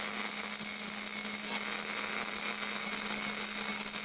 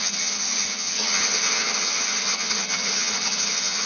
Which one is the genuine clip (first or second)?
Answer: first